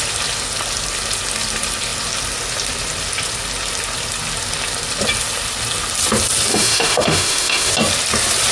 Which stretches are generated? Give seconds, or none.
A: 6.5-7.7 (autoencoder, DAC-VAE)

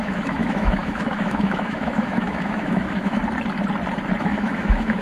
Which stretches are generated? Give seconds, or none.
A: 0.0-3.2 (autoencoder, DAC-VAE); 4.2-5.0

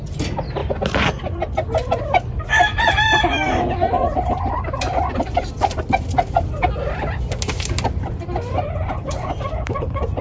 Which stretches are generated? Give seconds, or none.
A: none

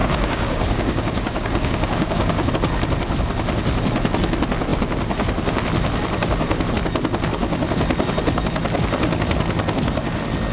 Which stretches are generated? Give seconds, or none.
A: 0.0-2.5 (codec, DAC)